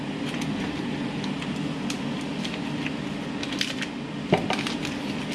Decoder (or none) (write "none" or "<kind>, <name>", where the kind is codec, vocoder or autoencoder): none